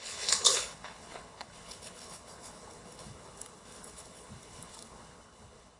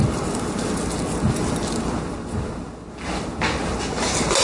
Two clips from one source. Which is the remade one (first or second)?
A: first